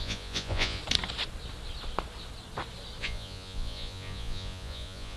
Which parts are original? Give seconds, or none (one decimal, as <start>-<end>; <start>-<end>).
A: 0.8-3.0